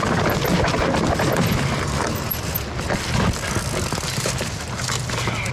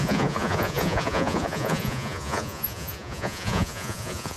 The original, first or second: first